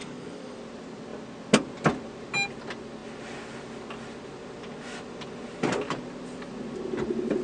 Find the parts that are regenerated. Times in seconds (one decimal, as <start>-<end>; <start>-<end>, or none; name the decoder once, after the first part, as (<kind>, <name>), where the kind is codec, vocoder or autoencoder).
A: 0.0-0.6 (codec, DAC)